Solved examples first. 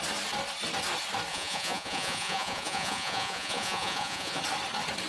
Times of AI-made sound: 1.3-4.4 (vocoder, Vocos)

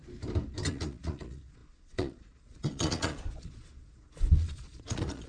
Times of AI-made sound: 0.7-5.3 (vocoder, Vocos)

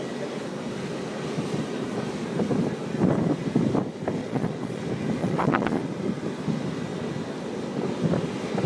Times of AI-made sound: 4.2-4.8 (vocoder, Vocos); 5.2-5.8

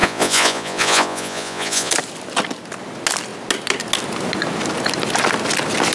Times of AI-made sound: 0.0-1.9 (vocoder, Vocos)

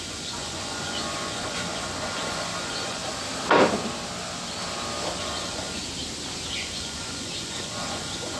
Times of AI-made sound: 0.0-3.0 (vocoder, Vocos); 5.2-5.8; 6.5-8.4

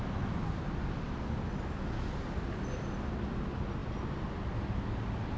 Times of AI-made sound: none

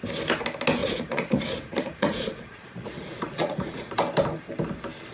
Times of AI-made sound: 0.8-3.9 (vocoder, Vocos)